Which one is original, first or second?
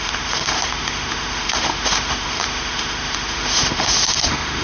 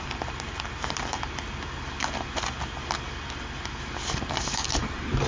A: second